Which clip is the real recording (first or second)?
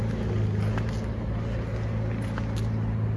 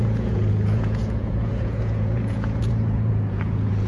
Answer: first